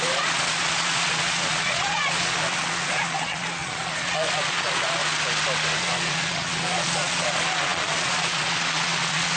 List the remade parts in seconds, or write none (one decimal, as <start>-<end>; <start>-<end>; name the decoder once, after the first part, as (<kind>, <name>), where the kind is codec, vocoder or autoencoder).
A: 0.0-5.0 (vocoder, Vocos); 5.8-9.4